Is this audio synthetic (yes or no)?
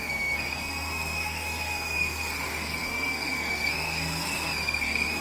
yes